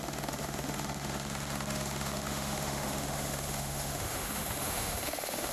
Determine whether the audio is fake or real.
fake